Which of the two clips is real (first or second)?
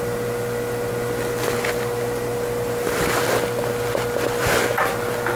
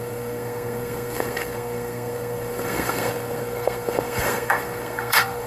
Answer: first